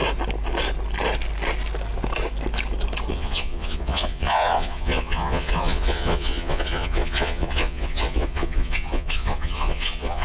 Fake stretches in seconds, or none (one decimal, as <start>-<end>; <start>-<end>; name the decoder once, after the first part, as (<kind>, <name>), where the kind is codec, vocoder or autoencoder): 3.1-10.2 (vocoder, Vocos)